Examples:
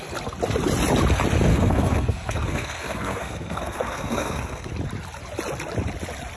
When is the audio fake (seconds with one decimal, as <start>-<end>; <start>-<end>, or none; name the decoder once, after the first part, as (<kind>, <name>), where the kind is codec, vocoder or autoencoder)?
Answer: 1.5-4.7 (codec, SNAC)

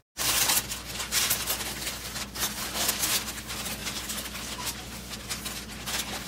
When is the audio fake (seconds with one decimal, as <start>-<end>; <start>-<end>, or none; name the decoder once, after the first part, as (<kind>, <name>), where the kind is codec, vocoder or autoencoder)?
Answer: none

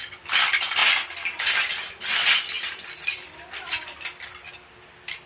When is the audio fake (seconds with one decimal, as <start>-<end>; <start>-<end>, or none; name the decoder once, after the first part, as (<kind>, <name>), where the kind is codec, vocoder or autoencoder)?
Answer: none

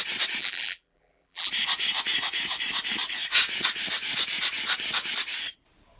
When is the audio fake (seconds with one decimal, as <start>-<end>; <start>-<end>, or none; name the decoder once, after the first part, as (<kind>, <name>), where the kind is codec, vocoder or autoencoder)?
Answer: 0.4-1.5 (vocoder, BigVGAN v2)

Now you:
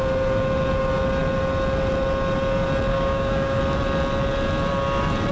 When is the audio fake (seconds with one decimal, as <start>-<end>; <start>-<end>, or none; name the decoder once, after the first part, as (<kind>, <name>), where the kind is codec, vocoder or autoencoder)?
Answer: 2.9-3.6 (codec, DAC)